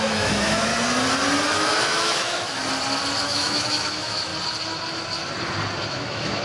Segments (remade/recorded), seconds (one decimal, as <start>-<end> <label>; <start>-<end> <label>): 0.0-0.7 remade; 0.7-1.5 recorded; 1.5-2.6 remade; 2.6-3.2 recorded; 3.2-4.3 remade; 4.3-5.9 recorded; 5.9-6.4 remade